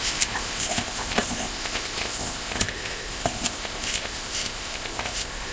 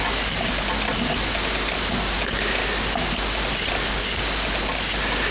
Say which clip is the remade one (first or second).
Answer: first